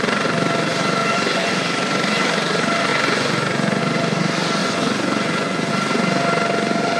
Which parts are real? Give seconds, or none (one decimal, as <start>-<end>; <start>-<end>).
0.0-1.0; 1.5-2.9; 3.8-4.6; 5.7-7.0